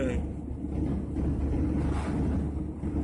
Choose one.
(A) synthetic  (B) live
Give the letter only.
B